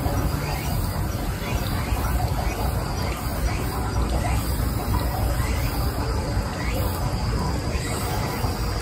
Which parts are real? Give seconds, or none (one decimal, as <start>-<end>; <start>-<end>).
0.0-8.8